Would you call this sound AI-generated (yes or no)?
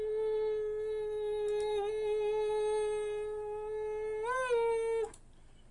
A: no